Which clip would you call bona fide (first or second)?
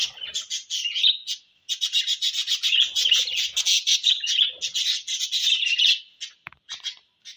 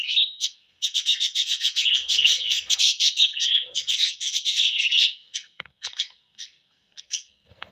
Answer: first